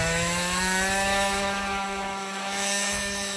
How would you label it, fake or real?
fake